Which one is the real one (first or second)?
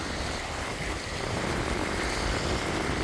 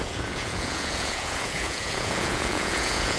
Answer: first